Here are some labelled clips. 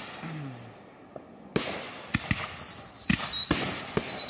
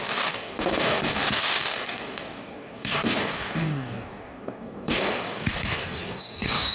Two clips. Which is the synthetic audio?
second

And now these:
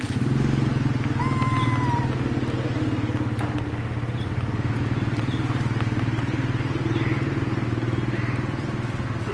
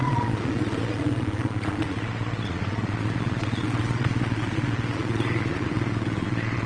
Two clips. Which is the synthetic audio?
second